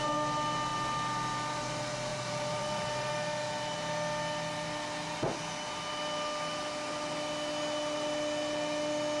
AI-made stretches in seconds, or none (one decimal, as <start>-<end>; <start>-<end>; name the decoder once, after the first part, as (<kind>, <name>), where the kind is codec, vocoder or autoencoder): 2.1-3.1 (vocoder, BigVGAN v2)